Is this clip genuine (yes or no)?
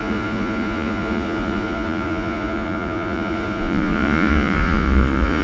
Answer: no